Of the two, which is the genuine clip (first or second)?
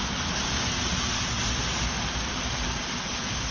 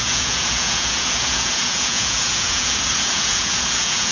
first